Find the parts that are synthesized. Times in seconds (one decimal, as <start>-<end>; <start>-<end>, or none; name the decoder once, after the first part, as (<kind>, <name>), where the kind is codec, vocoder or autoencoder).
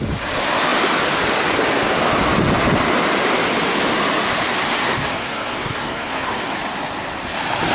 4.8-6.4 (codec, SNAC)